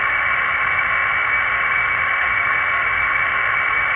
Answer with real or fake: fake